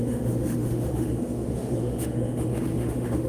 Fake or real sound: fake